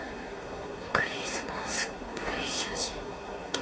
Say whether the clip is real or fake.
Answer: fake